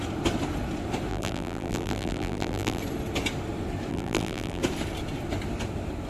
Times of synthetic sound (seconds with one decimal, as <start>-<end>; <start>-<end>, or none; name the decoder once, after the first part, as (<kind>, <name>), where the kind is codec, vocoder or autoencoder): 1.1-2.8 (vocoder, BigVGAN v2); 3.9-4.6